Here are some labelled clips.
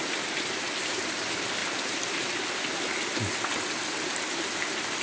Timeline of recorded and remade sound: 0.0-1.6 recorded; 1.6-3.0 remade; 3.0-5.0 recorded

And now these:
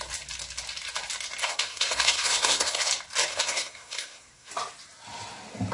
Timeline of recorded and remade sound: 0.0-1.4 recorded; 1.4-2.9 remade; 2.9-3.3 recorded; 3.3-4.5 remade; 4.5-5.7 recorded

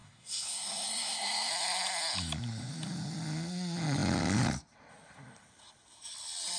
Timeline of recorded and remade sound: 0.0-1.5 remade; 1.5-6.6 recorded

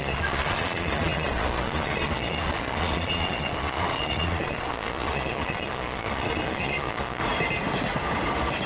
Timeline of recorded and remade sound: 0.0-7.2 remade; 7.2-8.7 recorded

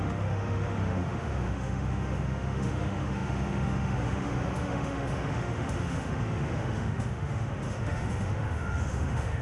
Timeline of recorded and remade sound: 0.0-9.4 remade

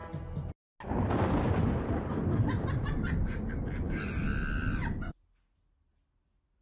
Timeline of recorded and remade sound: 0.0-6.6 recorded

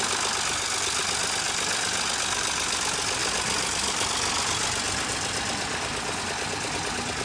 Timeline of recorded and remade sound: 0.0-7.2 recorded

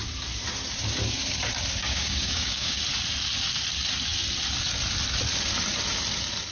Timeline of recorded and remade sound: 0.0-1.8 recorded; 1.8-2.8 remade; 2.8-6.5 recorded